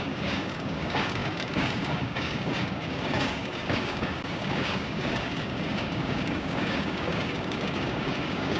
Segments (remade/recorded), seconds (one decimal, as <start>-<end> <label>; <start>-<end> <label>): 0.0-8.6 remade